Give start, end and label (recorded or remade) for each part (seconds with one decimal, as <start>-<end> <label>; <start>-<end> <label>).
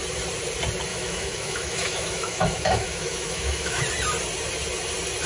0.0-0.9 recorded; 0.9-3.8 remade; 3.8-5.3 recorded